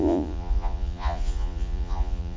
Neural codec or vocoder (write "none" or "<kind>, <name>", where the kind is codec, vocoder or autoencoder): vocoder, Vocos